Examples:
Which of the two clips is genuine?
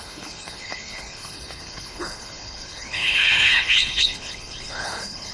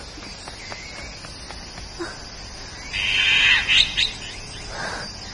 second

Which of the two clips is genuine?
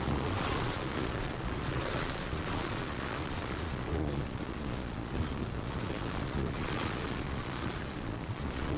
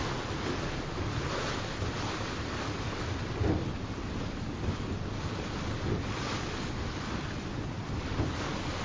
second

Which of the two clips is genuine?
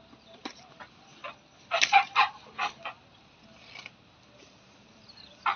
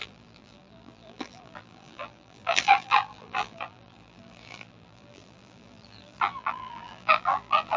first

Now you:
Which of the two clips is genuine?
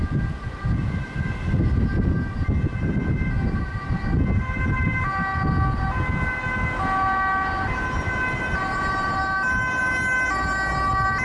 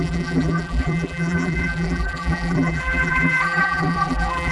first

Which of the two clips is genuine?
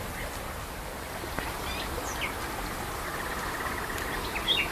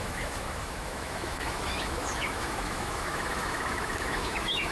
first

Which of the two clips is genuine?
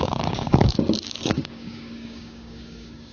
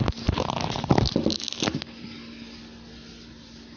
second